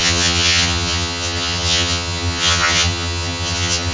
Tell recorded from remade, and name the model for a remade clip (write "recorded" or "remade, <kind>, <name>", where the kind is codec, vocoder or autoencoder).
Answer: remade, vocoder, HiFi-GAN